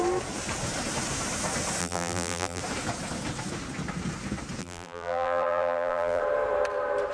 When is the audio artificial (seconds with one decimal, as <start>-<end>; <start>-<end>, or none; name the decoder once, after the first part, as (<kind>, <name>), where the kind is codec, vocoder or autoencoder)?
1.8-2.6 (vocoder, BigVGAN v2); 4.6-6.2